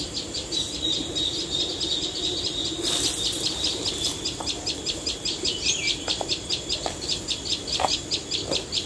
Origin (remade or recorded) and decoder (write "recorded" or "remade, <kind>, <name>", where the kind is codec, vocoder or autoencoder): recorded